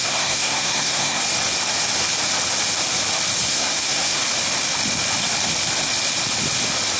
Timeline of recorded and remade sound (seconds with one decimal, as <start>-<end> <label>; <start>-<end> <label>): 0.0-1.2 remade; 1.2-3.5 recorded; 3.5-4.2 remade; 4.2-7.0 recorded